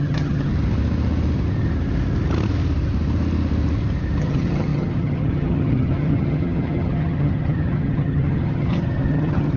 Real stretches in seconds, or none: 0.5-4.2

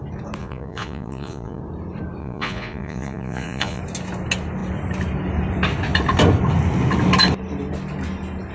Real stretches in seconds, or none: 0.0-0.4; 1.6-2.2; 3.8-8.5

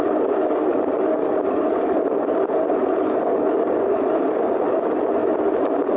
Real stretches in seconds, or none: 0.0-6.0